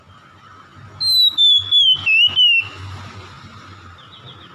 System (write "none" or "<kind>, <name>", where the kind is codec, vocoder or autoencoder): none